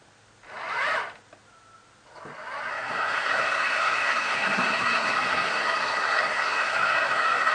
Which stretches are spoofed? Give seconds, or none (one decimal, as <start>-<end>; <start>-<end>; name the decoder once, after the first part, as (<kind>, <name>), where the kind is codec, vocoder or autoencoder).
2.7-7.5 (codec, SNAC)